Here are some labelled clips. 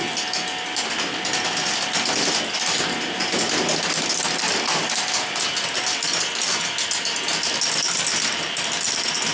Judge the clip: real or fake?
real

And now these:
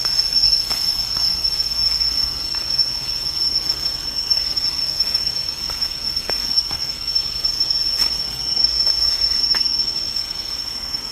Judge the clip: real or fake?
fake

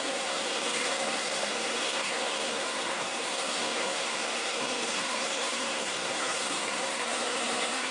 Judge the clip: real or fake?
fake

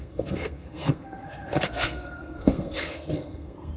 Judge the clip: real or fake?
fake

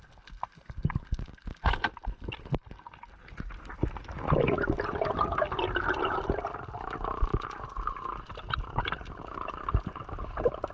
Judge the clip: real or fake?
real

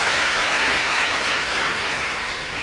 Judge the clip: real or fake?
fake